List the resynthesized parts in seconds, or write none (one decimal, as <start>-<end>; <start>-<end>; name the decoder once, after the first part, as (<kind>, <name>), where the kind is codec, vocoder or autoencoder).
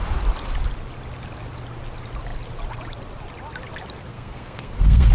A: 4.1-5.1 (codec, SNAC)